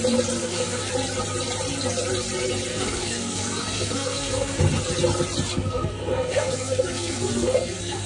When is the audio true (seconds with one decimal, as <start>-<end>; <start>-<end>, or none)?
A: 0.0-0.4; 0.9-2.7; 4.6-5.5